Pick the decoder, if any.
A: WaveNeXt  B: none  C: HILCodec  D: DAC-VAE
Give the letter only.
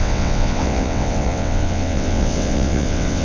A